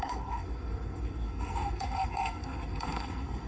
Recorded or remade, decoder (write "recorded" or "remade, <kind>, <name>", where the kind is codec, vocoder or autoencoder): remade, codec, SNAC